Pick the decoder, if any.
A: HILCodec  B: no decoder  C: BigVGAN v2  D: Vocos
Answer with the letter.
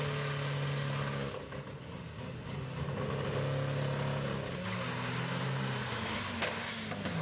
B